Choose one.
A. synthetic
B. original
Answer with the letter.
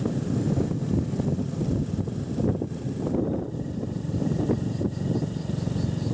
B